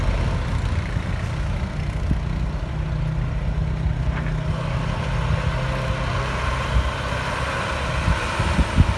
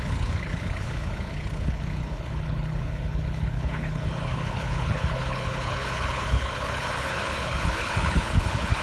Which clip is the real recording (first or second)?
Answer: first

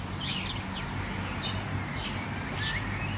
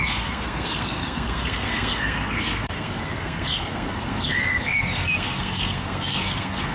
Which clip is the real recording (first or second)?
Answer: first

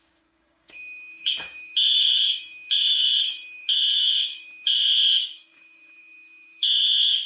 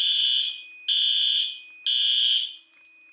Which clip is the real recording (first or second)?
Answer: second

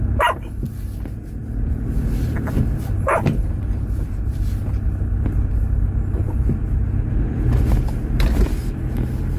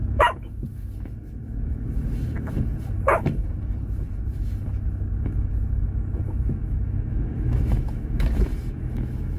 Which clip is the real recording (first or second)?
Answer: first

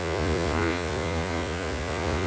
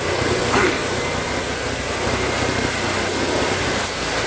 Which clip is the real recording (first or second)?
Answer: second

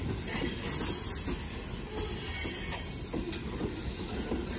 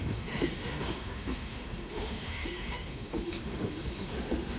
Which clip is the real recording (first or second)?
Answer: first